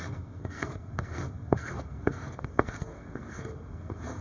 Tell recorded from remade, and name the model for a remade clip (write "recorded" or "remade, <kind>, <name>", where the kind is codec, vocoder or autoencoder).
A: remade, codec, SNAC